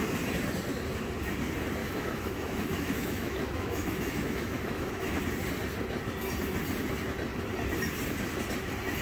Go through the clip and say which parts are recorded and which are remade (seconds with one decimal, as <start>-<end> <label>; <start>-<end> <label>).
0.0-1.8 recorded; 1.8-5.2 remade; 5.2-9.0 recorded